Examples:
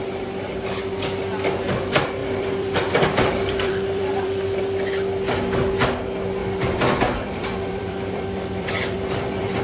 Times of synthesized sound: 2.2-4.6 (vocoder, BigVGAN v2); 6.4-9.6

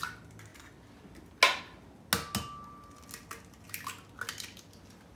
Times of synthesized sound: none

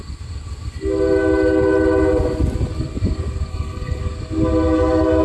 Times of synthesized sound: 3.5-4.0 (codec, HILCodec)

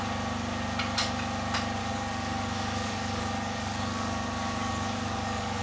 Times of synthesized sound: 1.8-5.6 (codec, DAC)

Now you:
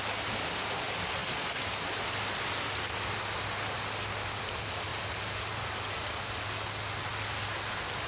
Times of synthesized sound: none